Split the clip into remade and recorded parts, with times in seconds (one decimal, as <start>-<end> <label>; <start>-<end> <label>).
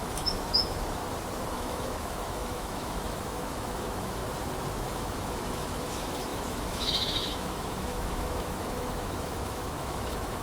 0.0-1.0 remade; 1.0-1.5 recorded; 1.5-4.2 remade; 4.2-4.8 recorded; 4.8-10.4 remade